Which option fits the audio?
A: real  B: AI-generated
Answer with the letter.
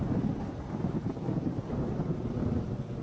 A